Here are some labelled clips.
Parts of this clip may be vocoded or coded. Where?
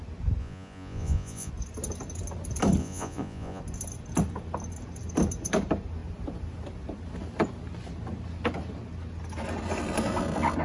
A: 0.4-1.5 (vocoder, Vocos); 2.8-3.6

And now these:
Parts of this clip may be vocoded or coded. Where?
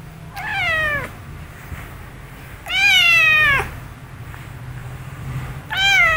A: 4.8-5.6 (vocoder, BigVGAN v2)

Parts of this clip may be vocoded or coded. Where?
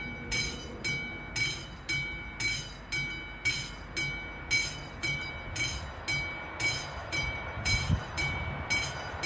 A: 4.6-5.3 (vocoder, BigVGAN v2); 7.0-8.4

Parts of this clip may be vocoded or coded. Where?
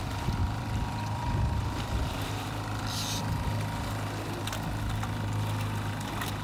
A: 0.4-3.6 (vocoder, BigVGAN v2)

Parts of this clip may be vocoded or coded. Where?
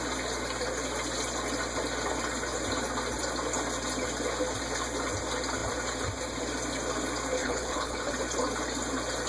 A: 7.4-8.1 (codec, HILCodec)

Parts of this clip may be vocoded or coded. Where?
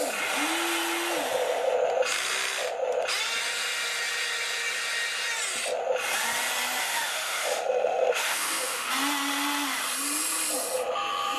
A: 6.8-8.9 (autoencoder, DAC-VAE)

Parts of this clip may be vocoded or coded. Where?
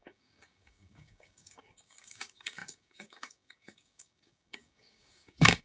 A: 0.0-5.6 (codec, DAC)